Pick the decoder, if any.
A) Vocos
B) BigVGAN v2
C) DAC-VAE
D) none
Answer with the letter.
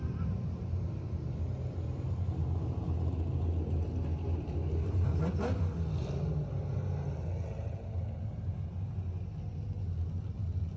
D